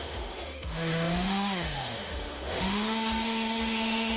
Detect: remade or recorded remade